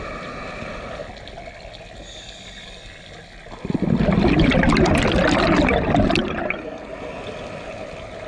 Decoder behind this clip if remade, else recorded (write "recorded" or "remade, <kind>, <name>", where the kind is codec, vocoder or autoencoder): recorded